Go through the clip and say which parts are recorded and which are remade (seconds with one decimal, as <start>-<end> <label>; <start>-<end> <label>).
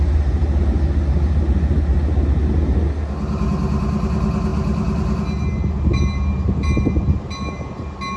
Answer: 0.0-8.2 recorded